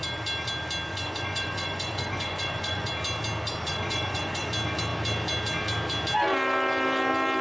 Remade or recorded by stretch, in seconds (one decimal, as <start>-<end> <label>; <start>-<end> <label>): 0.0-0.9 recorded; 0.9-2.9 remade; 2.9-3.7 recorded; 3.7-4.5 remade; 4.5-7.4 recorded

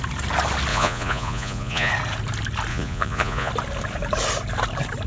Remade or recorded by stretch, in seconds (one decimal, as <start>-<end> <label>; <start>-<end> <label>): 0.0-0.7 recorded; 0.7-1.9 remade; 1.9-2.7 recorded; 2.7-3.5 remade; 3.5-5.1 recorded

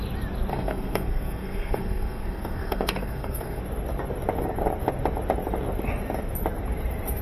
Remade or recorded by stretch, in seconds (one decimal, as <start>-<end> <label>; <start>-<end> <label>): 0.0-0.5 recorded; 0.5-3.6 remade; 3.6-7.2 recorded

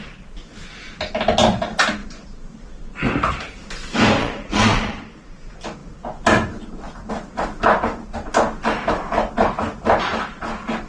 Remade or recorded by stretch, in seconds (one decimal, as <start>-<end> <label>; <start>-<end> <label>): 0.0-4.2 recorded; 4.2-5.1 remade; 5.1-10.9 recorded

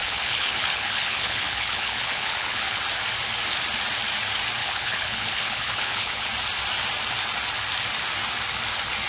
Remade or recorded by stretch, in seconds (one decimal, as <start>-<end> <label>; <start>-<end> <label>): 0.0-2.8 remade; 2.8-4.6 recorded; 4.6-6.3 remade; 6.3-9.1 recorded